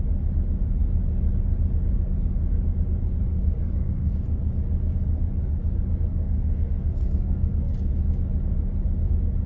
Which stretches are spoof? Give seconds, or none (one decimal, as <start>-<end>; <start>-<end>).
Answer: 3.3-4.1; 6.2-7.7